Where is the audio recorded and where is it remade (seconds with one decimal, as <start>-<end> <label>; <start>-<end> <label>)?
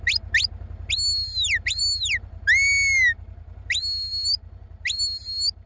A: 0.0-5.7 recorded